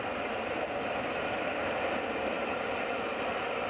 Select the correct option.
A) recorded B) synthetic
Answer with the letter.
A